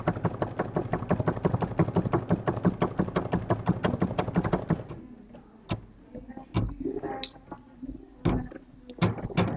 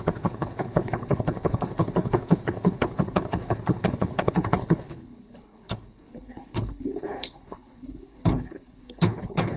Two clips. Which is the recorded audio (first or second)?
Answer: first